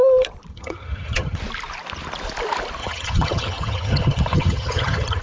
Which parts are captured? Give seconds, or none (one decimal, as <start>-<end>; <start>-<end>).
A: 0.0-0.5; 1.4-2.8